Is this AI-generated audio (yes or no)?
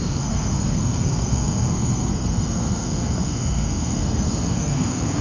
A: yes